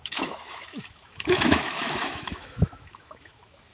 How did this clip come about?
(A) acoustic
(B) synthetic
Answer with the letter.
B